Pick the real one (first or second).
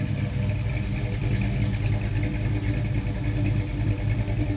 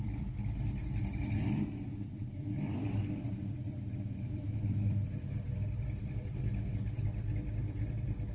first